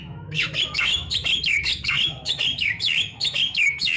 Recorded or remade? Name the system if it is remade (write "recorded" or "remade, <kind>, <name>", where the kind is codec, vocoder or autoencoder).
remade, autoencoder, DAC-VAE